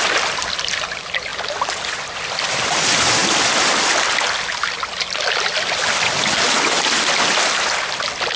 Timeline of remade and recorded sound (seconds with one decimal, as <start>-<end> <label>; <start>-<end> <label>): 0.0-8.4 recorded